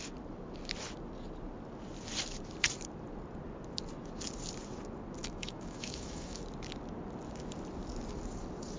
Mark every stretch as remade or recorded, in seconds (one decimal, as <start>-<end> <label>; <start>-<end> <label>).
0.0-5.2 recorded; 5.2-6.4 remade; 6.4-8.8 recorded